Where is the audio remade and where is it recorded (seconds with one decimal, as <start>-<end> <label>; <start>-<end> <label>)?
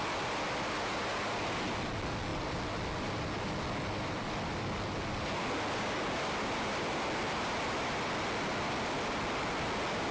0.0-10.1 recorded